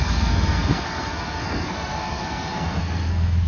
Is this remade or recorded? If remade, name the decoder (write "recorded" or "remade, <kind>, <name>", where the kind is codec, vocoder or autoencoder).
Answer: remade, codec, SNAC